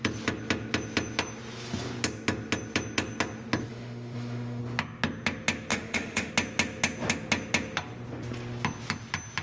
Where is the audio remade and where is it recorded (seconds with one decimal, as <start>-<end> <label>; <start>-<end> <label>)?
0.0-3.7 recorded; 3.7-4.6 remade; 4.6-5.7 recorded; 5.7-6.3 remade; 6.3-9.4 recorded